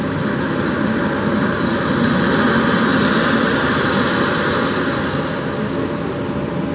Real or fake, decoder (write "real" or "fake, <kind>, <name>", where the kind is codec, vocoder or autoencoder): real